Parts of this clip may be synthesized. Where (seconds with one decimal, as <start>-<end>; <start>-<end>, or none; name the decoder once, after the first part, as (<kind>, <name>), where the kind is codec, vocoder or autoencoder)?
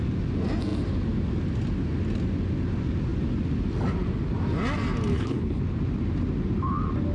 5.1-5.6 (codec, HILCodec)